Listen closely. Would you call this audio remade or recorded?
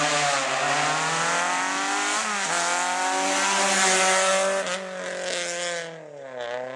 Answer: recorded